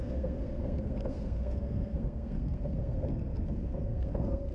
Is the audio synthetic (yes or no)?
yes